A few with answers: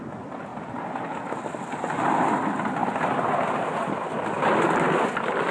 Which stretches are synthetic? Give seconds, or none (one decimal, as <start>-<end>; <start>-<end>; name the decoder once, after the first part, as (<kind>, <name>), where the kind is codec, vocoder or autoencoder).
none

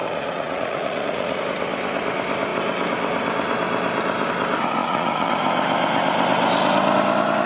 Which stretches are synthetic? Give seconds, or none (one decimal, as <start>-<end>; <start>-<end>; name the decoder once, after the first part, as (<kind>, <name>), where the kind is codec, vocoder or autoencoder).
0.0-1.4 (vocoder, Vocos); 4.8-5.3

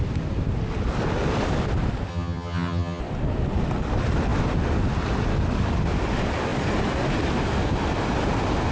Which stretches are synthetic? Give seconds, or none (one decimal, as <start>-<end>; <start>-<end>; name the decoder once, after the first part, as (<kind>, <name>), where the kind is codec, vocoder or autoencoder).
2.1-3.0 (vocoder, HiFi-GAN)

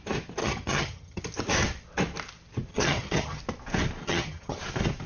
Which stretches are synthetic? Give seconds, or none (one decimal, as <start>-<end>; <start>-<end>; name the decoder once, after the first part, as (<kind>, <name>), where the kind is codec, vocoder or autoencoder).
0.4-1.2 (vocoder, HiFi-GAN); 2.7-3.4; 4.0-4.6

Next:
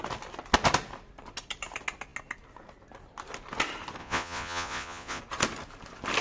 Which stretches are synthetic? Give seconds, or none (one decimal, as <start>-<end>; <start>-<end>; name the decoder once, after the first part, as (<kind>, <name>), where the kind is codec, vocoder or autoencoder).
4.0-5.2 (vocoder, Vocos)

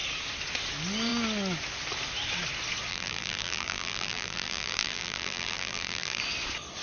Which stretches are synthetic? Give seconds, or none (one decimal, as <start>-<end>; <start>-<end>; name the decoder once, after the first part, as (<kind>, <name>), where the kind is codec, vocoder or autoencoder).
2.9-6.2 (vocoder, BigVGAN v2)

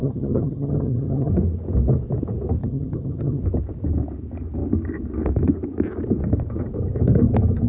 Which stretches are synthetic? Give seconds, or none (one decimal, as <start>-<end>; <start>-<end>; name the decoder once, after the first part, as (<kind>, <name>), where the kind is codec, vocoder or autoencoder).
0.0-1.3 (vocoder, HiFi-GAN); 2.6-3.4

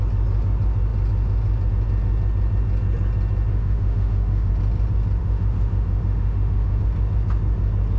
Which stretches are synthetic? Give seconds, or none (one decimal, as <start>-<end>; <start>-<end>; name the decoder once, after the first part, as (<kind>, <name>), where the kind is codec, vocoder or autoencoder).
3.5-4.5 (autoencoder, DAC-VAE); 5.2-6.8